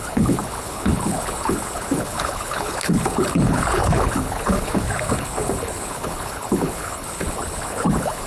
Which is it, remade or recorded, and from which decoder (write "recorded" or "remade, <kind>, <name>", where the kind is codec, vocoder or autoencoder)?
remade, codec, HILCodec